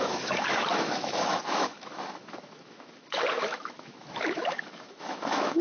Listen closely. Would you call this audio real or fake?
fake